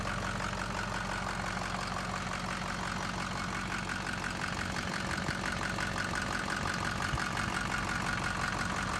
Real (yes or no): yes